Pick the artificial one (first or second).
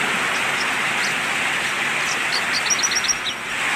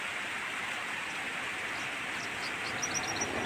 second